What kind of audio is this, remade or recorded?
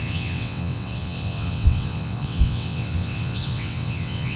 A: remade